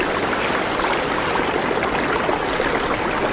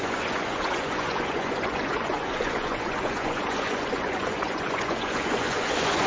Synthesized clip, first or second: second